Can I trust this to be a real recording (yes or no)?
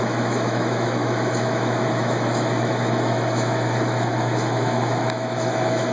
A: no